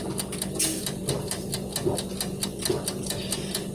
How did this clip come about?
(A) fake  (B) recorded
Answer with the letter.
B